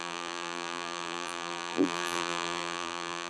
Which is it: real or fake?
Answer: fake